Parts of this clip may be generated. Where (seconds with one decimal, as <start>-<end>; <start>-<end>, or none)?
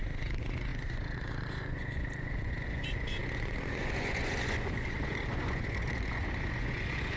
0.0-7.2